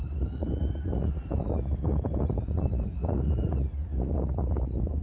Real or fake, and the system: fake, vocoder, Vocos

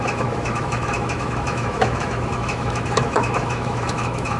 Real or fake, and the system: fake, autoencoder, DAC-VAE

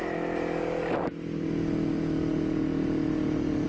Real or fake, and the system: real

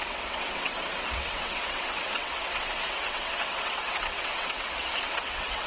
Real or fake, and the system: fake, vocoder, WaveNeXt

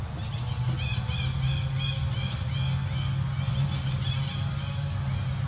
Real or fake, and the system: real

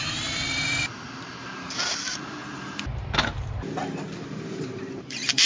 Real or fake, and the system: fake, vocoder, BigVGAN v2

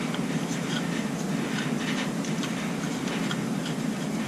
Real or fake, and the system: real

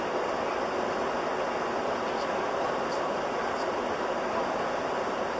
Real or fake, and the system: real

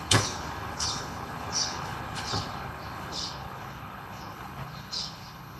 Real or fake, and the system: fake, codec, HILCodec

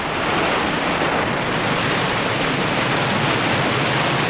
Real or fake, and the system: real